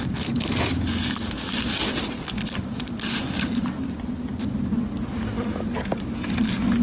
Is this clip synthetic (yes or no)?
no